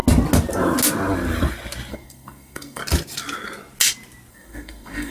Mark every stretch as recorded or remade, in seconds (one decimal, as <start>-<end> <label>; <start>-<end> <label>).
0.0-1.9 recorded; 1.9-2.8 remade; 2.8-4.3 recorded; 4.3-5.1 remade